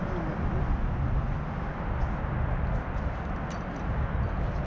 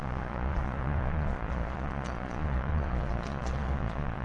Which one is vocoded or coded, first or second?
second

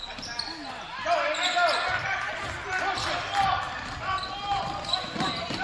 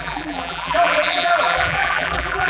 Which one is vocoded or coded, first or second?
second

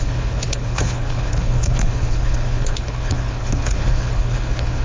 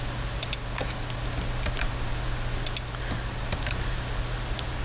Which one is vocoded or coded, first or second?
first